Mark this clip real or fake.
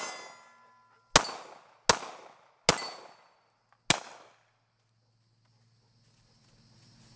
real